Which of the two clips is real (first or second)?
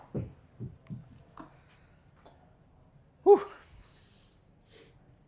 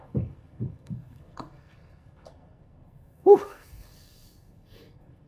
first